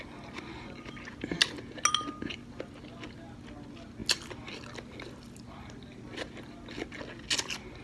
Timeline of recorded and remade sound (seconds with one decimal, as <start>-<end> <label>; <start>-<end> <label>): 0.0-7.8 recorded